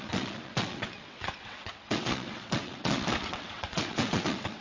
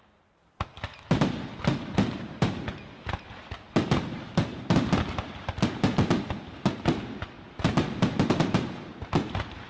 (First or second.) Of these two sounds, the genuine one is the second